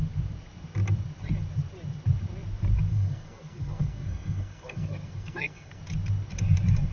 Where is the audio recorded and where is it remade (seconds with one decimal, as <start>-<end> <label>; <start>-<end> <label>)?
0.0-2.9 recorded; 2.9-5.8 remade; 5.8-6.9 recorded